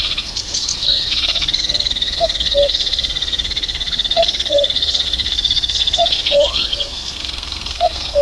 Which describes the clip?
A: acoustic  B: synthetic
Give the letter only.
B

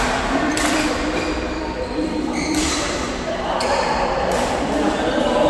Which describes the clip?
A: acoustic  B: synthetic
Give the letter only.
B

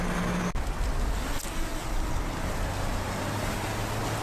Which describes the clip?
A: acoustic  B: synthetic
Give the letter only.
A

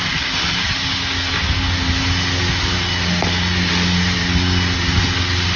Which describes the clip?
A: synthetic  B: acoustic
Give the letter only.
B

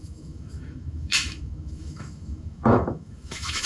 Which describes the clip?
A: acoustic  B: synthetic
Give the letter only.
B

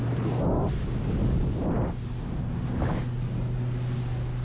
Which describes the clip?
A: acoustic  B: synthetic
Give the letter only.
A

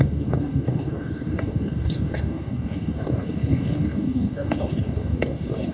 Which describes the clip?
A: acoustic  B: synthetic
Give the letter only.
B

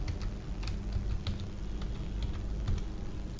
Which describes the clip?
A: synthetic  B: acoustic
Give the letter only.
B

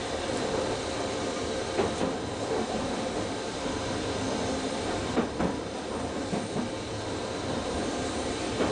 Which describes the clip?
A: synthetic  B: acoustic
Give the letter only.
A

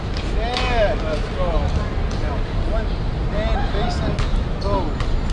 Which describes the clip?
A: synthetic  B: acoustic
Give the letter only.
B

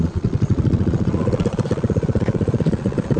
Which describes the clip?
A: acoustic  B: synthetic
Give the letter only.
B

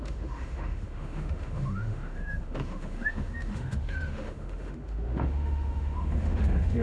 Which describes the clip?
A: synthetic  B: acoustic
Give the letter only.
A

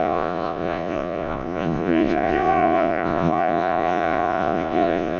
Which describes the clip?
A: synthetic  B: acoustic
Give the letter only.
A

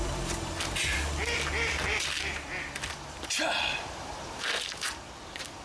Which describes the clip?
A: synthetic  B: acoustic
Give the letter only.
A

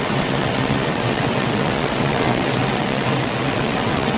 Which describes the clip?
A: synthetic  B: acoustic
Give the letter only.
A